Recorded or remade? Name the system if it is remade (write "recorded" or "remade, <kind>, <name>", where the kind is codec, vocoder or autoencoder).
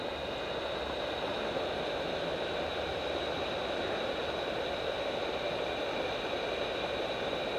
recorded